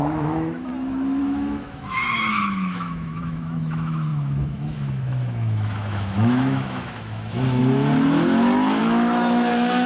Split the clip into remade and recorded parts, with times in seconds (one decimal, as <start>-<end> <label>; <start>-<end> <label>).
0.0-0.7 remade; 0.7-1.2 recorded; 1.2-7.6 remade; 7.6-8.8 recorded; 8.8-9.9 remade